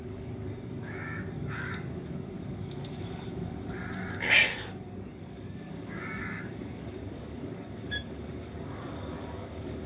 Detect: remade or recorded remade